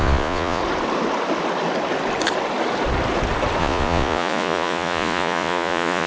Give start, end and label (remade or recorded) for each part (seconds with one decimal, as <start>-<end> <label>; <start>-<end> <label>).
0.0-0.6 remade; 0.6-3.6 recorded; 3.6-6.1 remade

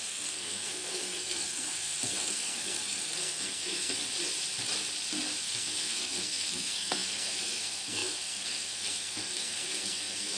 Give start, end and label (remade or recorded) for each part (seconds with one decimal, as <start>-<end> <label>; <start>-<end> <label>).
0.0-4.0 remade; 4.0-5.4 recorded; 5.4-10.4 remade

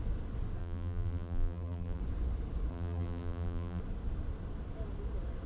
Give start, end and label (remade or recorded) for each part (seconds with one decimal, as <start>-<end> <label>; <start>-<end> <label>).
0.0-0.6 recorded; 0.6-2.0 remade; 2.0-2.7 recorded; 2.7-3.8 remade; 3.8-5.5 recorded

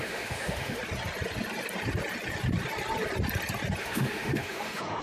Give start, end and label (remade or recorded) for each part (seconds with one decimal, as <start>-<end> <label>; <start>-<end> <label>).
0.0-0.8 remade; 0.8-3.8 recorded; 3.8-5.0 remade

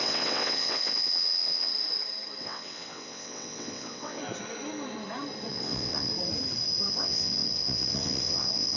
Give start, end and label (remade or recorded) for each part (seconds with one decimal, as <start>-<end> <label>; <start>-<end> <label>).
0.0-1.7 remade; 1.7-2.4 recorded; 2.4-4.2 remade; 4.2-5.5 recorded; 5.5-6.1 remade; 6.1-6.9 recorded; 6.9-8.8 remade